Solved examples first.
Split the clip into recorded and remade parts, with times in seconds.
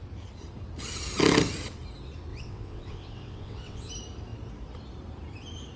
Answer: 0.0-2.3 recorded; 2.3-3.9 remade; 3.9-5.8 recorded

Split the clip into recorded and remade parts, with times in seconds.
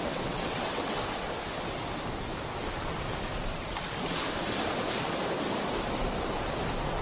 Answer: 0.0-1.0 remade; 1.0-7.0 recorded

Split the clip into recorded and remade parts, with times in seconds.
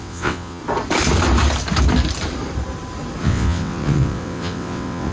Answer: 0.0-0.6 remade; 0.6-3.2 recorded; 3.2-5.1 remade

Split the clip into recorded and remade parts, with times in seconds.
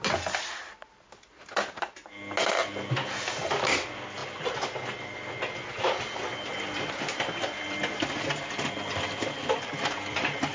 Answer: 0.0-10.5 recorded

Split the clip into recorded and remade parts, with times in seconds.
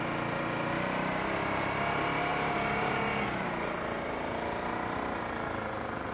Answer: 0.0-6.1 recorded